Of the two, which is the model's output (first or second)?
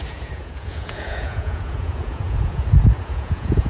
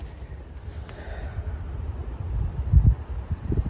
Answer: first